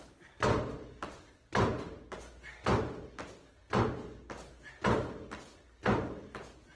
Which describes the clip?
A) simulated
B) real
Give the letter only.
B